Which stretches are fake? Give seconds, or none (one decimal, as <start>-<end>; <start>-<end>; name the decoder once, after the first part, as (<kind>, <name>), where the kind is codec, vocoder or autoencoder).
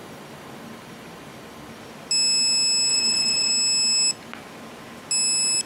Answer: 0.0-1.8 (vocoder, BigVGAN v2); 2.9-3.5